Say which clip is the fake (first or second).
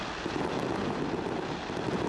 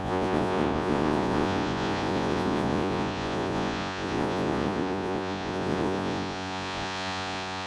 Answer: second